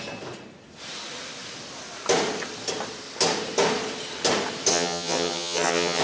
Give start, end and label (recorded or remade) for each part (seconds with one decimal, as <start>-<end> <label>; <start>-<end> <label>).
0.0-4.7 recorded; 4.7-6.0 remade